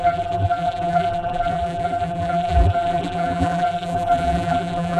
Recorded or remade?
remade